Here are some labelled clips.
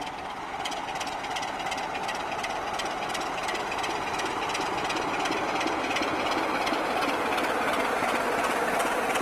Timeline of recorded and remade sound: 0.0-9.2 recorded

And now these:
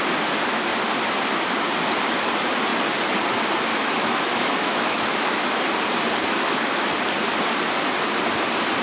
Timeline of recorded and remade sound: 0.0-3.7 recorded; 3.7-5.6 remade; 5.6-6.2 recorded; 6.2-6.9 remade; 6.9-8.8 recorded

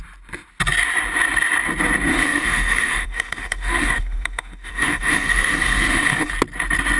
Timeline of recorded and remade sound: 0.0-2.1 recorded; 2.1-6.3 remade; 6.3-7.0 recorded

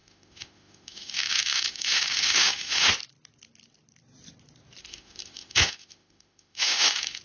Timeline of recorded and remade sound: 0.0-2.9 remade; 2.9-4.8 recorded; 4.8-7.2 remade